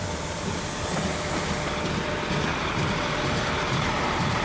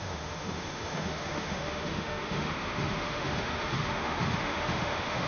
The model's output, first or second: second